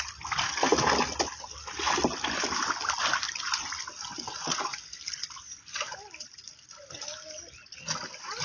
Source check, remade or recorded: recorded